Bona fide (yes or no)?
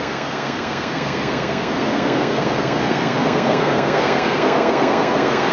no